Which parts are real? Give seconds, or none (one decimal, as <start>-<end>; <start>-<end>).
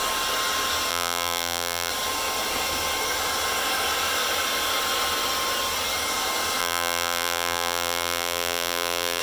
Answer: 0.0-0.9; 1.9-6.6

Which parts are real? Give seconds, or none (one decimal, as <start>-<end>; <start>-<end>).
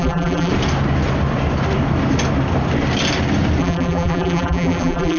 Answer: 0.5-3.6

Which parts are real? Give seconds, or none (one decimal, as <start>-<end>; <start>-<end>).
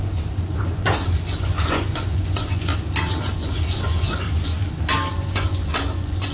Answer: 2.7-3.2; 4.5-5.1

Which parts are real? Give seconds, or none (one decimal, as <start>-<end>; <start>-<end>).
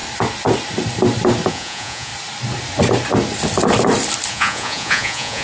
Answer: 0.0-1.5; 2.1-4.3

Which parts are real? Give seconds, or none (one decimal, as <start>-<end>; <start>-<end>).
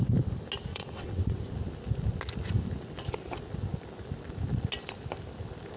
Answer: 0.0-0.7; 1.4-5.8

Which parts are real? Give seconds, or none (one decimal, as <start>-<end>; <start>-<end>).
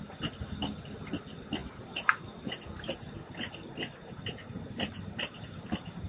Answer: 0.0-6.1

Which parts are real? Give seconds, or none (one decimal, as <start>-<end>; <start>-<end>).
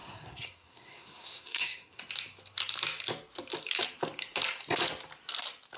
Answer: 2.0-5.8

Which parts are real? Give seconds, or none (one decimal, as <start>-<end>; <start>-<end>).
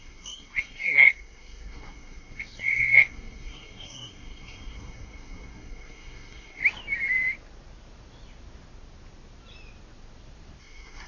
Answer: 6.6-10.6